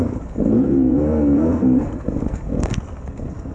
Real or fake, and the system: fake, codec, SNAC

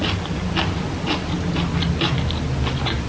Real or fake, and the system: real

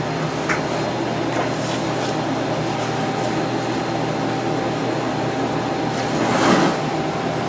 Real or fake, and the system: real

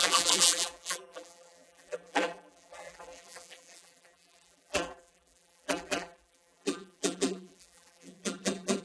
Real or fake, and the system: fake, vocoder, BigVGAN v2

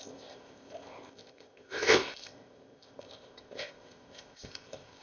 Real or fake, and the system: fake, codec, ZipCodec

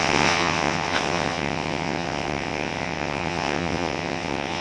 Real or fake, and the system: fake, vocoder, WaveNeXt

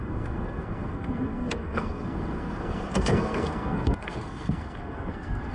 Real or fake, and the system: fake, codec, SNAC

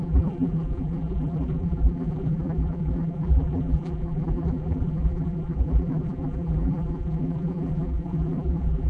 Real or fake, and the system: fake, vocoder, BigVGAN v2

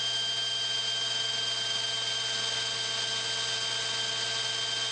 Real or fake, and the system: real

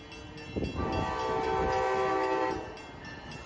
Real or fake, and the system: real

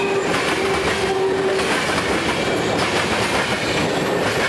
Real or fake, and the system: real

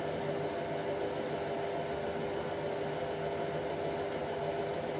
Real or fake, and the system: real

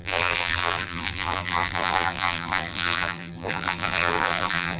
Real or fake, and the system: fake, vocoder, BigVGAN v2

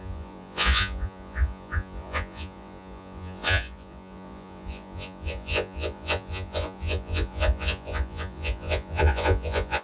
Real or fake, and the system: fake, vocoder, Vocos